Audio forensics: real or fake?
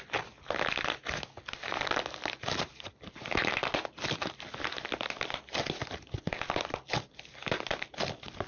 real